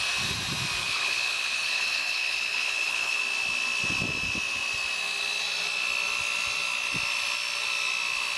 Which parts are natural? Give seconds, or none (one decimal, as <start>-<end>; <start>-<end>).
0.0-0.8; 3.2-8.4